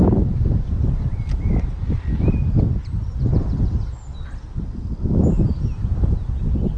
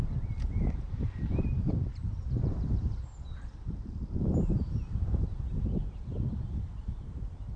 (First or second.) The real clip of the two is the first